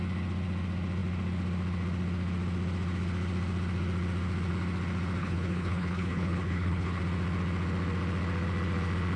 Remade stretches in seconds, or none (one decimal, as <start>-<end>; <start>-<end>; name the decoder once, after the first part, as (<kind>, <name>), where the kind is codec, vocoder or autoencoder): 5.2-7.0 (codec, HILCodec)